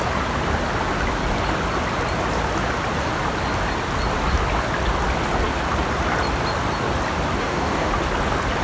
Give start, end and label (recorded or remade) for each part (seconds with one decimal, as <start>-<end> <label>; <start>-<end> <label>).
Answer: 0.0-7.4 recorded; 7.4-7.9 remade; 7.9-8.6 recorded